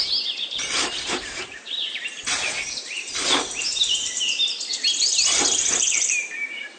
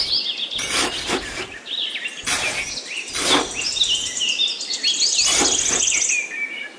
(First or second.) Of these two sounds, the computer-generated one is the first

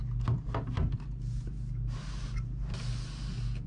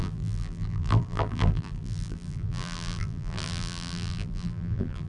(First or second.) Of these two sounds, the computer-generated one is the second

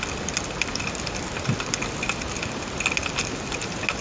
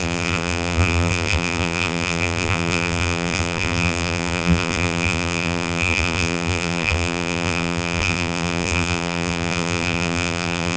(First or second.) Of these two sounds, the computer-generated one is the second